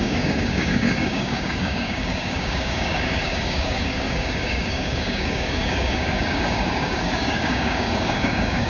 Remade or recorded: remade